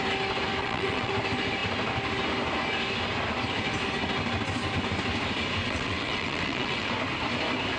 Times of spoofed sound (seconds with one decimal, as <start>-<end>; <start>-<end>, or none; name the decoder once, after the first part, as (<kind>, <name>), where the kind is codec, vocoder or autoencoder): 0.6-1.1 (vocoder, WaveNeXt); 5.6-6.9